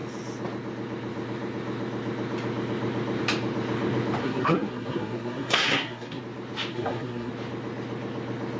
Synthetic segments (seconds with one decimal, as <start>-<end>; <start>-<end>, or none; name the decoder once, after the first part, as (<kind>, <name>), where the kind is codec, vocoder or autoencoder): 4.2-6.2 (codec, SNAC); 6.7-7.3

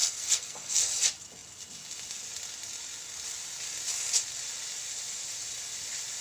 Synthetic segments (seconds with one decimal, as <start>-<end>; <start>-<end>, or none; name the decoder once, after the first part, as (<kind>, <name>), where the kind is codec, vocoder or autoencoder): 0.0-0.9 (codec, SNAC)

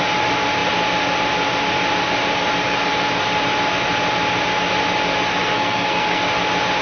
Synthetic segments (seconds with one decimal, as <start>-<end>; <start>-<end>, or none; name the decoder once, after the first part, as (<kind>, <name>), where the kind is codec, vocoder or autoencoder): 5.4-6.2 (codec, SNAC)

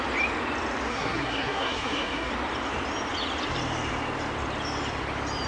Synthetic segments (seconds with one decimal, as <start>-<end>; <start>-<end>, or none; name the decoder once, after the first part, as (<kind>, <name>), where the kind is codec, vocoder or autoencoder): 0.9-2.3 (codec, SNAC)

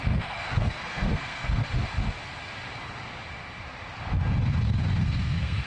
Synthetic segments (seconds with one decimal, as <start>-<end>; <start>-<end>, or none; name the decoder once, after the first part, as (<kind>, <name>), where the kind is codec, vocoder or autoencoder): 0.0-1.6 (codec, SNAC); 5.0-5.7

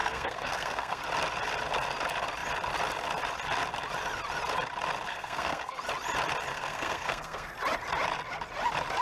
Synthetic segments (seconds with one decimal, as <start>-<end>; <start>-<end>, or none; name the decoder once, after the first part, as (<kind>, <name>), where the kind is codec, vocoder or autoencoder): 0.0-1.0 (codec, SNAC); 5.1-5.8; 6.5-7.5